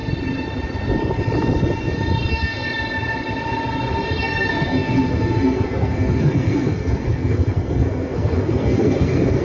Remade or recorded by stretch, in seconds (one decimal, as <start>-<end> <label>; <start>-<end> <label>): 0.0-2.3 recorded; 2.3-2.7 remade; 2.7-4.2 recorded; 4.2-9.4 remade